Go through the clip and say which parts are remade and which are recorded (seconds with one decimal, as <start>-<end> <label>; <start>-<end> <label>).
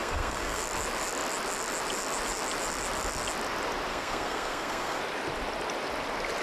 0.0-0.6 remade; 0.6-3.9 recorded; 3.9-5.0 remade; 5.0-6.4 recorded